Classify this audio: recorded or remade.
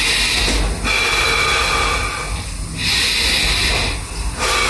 recorded